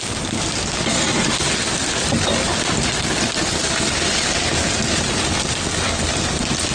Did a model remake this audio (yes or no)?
no